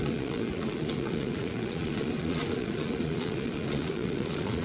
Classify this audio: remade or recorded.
remade